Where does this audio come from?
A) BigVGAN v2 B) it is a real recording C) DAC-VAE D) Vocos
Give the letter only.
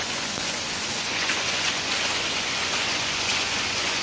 D